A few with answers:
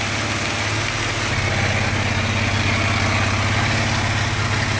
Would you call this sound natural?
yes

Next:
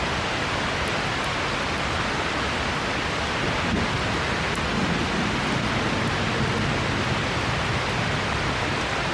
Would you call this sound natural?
yes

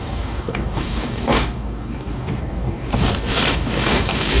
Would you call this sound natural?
no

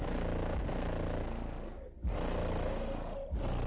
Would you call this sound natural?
yes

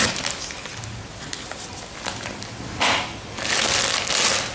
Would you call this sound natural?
yes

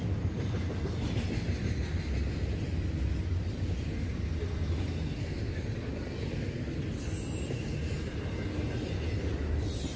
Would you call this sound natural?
yes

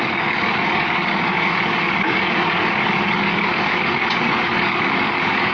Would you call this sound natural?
no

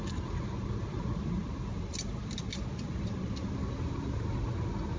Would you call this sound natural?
yes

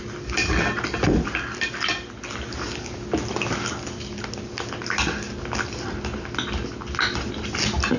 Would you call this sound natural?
yes